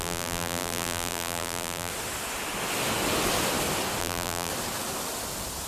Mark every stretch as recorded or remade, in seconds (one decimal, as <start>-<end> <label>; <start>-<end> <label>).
0.0-1.9 remade; 1.9-4.0 recorded; 4.0-4.5 remade; 4.5-5.7 recorded